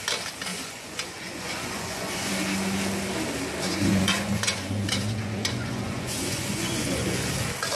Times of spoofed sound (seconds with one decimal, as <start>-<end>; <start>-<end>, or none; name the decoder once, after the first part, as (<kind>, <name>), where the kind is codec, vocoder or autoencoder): 0.5-2.3 (vocoder, Vocos); 3.7-7.3